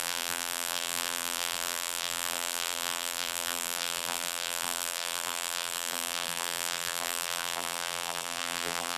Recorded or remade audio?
remade